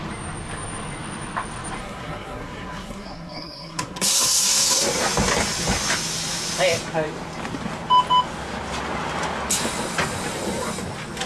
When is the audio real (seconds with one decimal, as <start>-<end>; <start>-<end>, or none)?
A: 0.0-1.8; 4.8-11.3